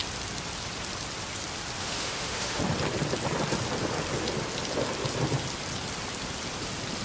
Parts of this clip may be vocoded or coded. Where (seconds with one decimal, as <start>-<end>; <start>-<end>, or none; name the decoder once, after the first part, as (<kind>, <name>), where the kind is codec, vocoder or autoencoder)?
1.8-2.6 (autoencoder, DAC-VAE)